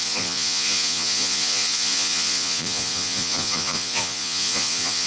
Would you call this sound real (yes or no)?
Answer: no